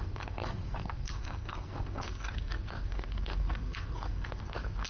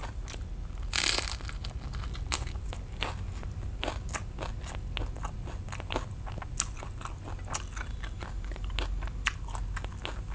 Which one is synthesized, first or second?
first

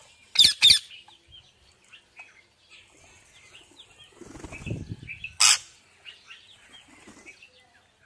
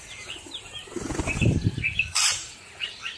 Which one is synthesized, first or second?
second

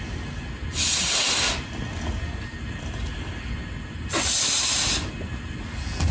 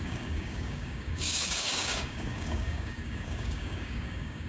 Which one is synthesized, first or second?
second